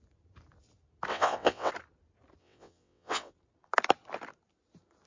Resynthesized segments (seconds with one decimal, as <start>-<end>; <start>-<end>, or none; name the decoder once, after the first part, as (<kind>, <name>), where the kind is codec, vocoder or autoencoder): 1.1-1.7 (vocoder, WaveNeXt); 2.4-3.3